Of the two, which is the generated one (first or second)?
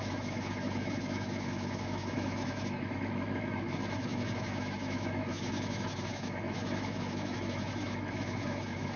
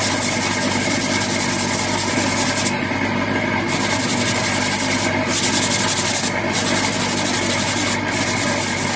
first